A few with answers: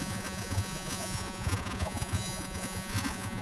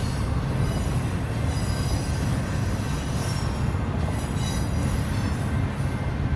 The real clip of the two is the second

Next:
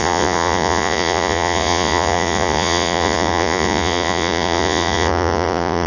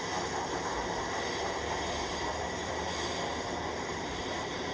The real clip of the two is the second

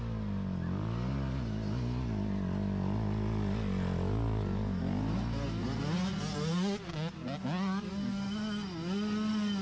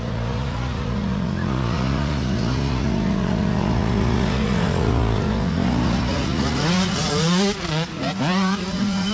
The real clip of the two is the first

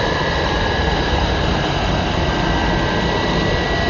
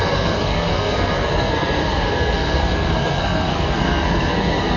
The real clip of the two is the first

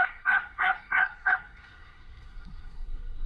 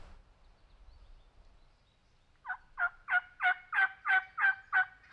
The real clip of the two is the second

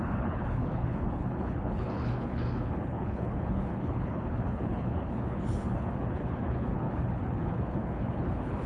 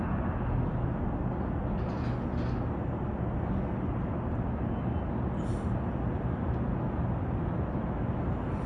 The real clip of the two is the second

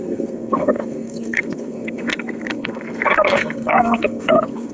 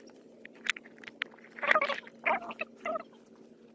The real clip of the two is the second